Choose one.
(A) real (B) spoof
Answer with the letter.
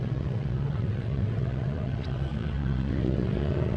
B